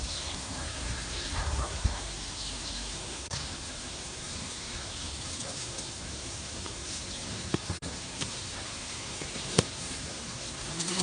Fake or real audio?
fake